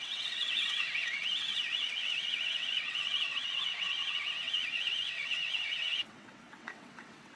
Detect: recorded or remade remade